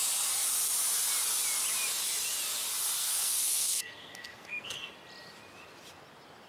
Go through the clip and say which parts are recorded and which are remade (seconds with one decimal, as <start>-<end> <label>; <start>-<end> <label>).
0.0-3.0 recorded; 3.0-4.9 remade; 4.9-6.5 recorded

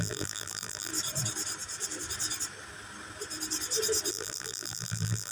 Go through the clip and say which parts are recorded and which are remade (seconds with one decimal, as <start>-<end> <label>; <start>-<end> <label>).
0.0-0.9 remade; 0.9-4.1 recorded; 4.1-5.3 remade

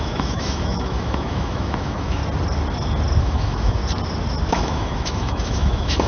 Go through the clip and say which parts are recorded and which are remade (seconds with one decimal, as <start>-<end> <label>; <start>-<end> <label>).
0.0-2.2 remade; 2.2-3.2 recorded; 3.2-3.8 remade; 3.8-4.5 recorded; 4.5-6.1 remade

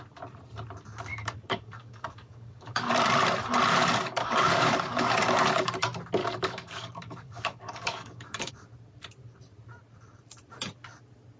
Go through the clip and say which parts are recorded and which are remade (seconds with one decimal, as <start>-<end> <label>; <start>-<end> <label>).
0.0-1.1 recorded; 1.1-2.9 remade; 2.9-3.8 recorded; 3.8-5.7 remade; 5.7-6.2 recorded; 6.2-8.5 remade; 8.5-11.4 recorded

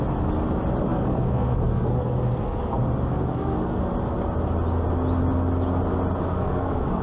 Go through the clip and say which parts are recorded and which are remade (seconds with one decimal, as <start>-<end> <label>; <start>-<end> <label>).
0.0-0.9 recorded; 0.9-2.8 remade; 2.8-3.3 recorded; 3.3-3.8 remade; 3.8-6.3 recorded; 6.3-7.0 remade